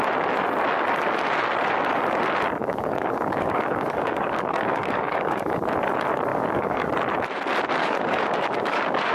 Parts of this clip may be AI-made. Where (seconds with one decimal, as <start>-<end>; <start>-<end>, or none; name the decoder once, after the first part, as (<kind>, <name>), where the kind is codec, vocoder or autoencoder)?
2.6-5.6 (codec, DAC); 6.3-6.9; 7.8-9.1